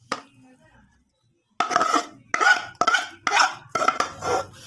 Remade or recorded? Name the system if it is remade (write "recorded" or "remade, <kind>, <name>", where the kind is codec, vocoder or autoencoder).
recorded